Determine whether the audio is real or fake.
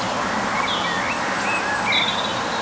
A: real